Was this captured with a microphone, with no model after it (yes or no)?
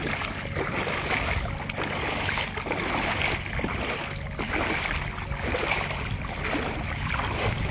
yes